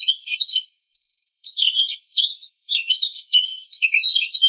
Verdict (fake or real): fake